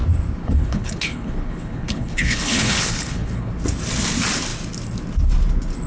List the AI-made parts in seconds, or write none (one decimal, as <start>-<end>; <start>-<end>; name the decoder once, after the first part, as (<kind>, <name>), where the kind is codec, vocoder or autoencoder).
0.4-3.5 (codec, HILCodec)